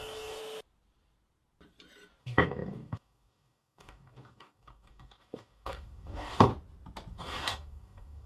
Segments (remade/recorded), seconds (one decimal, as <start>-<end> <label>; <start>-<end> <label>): 0.0-0.4 remade; 0.4-2.2 recorded; 2.2-6.5 remade; 6.5-7.1 recorded; 7.1-8.3 remade